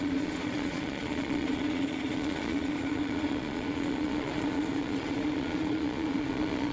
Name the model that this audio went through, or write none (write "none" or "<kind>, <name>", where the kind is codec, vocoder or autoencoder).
vocoder, Vocos